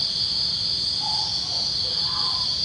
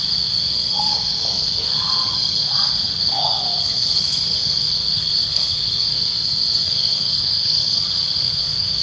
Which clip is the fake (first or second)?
second